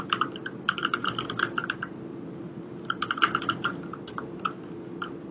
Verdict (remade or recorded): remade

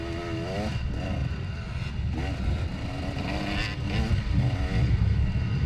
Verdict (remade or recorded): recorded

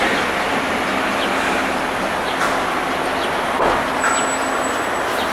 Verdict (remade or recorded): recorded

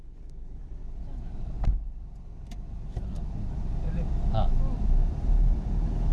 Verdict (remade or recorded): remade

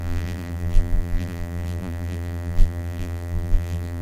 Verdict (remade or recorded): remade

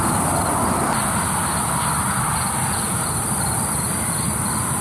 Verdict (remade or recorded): remade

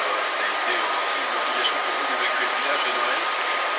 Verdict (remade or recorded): remade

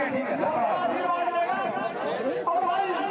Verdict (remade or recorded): remade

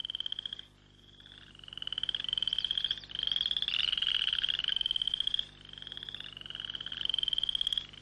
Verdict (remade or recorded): recorded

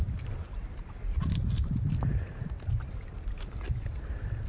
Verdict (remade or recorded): recorded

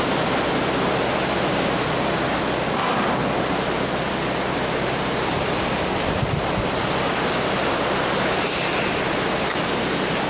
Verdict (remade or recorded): recorded